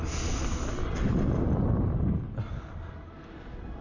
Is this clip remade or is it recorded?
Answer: recorded